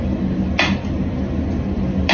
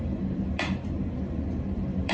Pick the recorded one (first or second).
first